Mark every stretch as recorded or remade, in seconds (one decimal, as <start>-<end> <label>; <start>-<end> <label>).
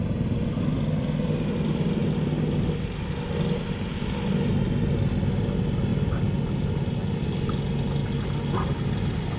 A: 0.0-9.4 recorded